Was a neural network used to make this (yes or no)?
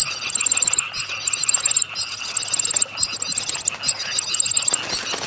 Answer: no